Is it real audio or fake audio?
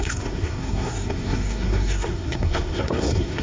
fake